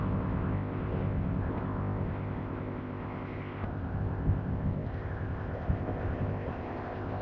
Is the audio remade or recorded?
remade